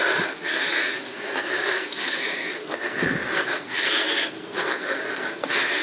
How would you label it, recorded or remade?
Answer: remade